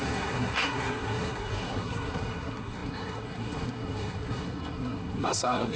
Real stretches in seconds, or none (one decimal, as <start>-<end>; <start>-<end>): none